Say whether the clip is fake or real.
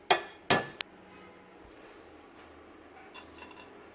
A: real